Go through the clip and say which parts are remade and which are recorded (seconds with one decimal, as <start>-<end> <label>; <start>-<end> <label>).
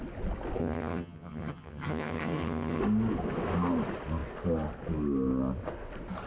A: 0.0-0.6 recorded; 0.6-2.8 remade; 2.8-6.3 recorded